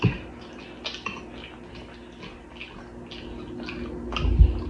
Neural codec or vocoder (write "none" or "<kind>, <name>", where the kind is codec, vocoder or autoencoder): none